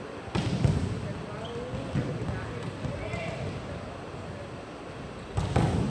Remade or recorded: recorded